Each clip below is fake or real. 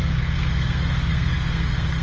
fake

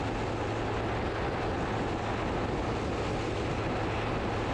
real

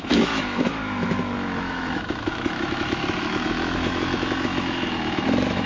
fake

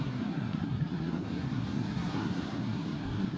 fake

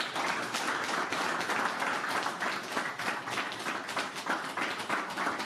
real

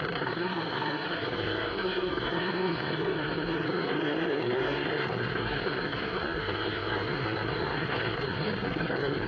fake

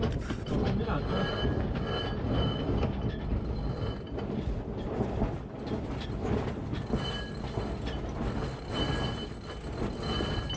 real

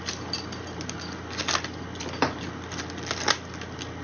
real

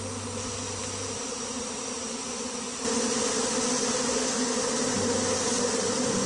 real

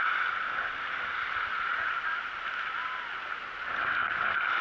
real